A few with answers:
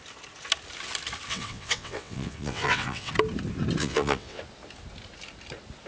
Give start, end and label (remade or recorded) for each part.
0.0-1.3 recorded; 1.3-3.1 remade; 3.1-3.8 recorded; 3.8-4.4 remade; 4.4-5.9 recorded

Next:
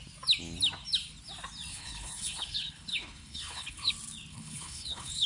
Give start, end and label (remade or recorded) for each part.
0.0-1.7 recorded; 1.7-3.9 remade; 3.9-4.3 recorded; 4.3-5.3 remade

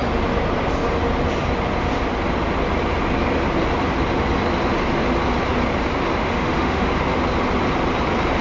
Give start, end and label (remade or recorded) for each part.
0.0-6.2 recorded; 6.2-6.9 remade; 6.9-8.4 recorded